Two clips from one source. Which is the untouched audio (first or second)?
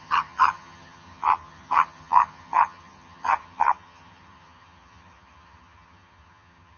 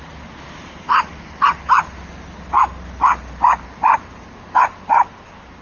second